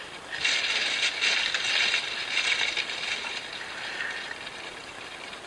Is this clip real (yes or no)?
yes